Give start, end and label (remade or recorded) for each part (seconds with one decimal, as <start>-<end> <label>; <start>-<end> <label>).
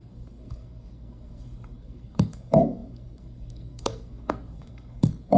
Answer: 0.0-5.4 remade